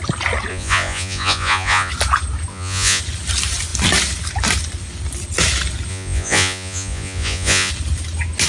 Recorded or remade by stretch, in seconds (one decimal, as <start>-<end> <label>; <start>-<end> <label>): 0.0-0.5 recorded; 0.5-1.9 remade; 1.9-2.5 recorded; 2.5-3.0 remade; 3.0-5.9 recorded; 5.9-7.7 remade; 7.7-8.5 recorded

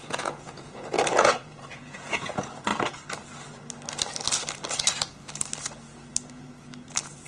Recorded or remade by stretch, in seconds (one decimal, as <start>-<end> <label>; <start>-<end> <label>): 0.0-2.7 remade; 2.7-7.3 recorded

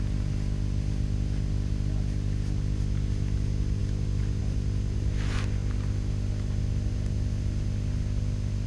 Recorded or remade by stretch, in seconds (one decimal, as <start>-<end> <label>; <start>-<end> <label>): 0.0-8.7 recorded

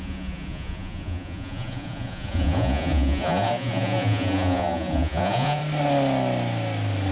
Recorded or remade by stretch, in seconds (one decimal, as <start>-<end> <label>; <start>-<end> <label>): 0.0-5.6 remade; 5.6-7.1 recorded

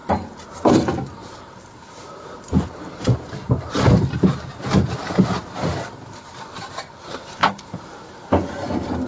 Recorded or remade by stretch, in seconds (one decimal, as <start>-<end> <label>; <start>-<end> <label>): 0.0-0.7 remade; 0.7-1.2 recorded; 1.2-5.4 remade; 5.4-7.4 recorded; 7.4-8.0 remade; 8.0-9.1 recorded

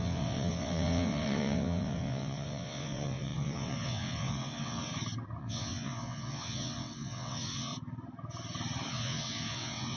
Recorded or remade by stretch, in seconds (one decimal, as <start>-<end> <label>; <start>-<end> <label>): 0.0-4.9 remade; 4.9-5.4 recorded; 5.4-7.7 remade; 7.7-8.9 recorded; 8.9-10.0 remade